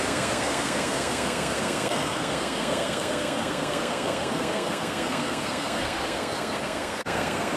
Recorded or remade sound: remade